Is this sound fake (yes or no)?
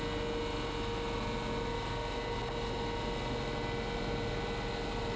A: no